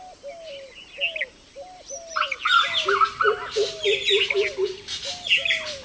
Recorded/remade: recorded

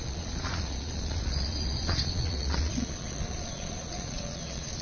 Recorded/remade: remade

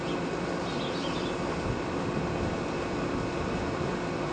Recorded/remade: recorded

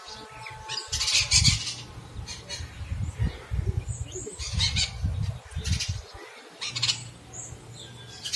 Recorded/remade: recorded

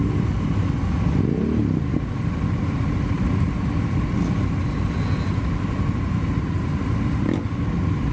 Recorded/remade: recorded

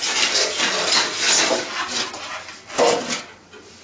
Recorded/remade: recorded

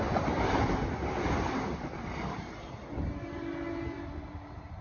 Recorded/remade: recorded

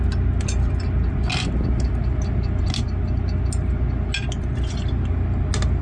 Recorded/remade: recorded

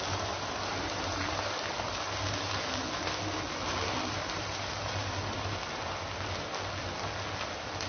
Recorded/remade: recorded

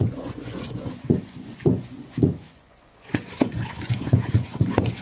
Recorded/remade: remade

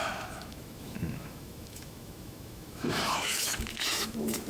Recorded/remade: remade